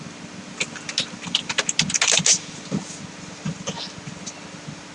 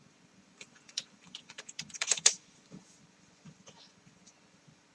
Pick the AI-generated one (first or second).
second